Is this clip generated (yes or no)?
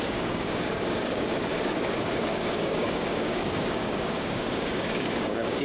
yes